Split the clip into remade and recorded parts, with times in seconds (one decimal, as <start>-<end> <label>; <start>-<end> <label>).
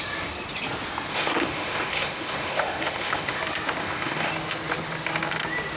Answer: 0.0-1.1 recorded; 1.1-3.4 remade; 3.4-3.8 recorded; 3.8-4.3 remade; 4.3-5.8 recorded